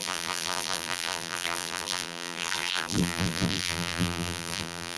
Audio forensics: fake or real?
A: fake